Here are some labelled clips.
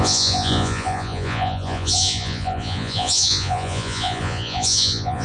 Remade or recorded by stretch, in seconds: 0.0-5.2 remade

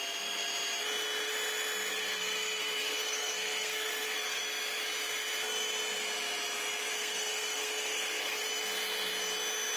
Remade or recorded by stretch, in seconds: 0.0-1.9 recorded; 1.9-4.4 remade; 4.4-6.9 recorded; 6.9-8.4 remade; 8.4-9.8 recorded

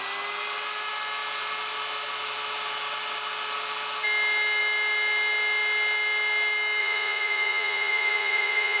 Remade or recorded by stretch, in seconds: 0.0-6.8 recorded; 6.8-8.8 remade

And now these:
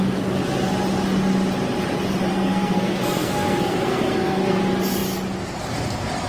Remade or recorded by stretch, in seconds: 0.0-2.3 recorded; 2.3-4.6 remade; 4.6-6.3 recorded

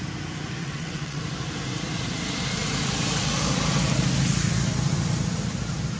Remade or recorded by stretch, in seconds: 0.0-0.6 recorded; 0.6-1.2 remade; 1.2-6.0 recorded

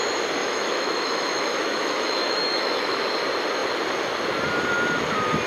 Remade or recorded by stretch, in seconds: 0.0-0.4 recorded; 0.4-3.1 remade; 3.1-5.5 recorded

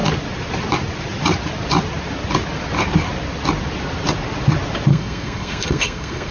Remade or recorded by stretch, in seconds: 0.0-4.9 recorded; 4.9-6.3 remade

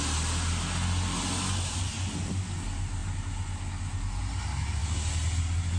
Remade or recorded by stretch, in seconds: 0.0-5.8 recorded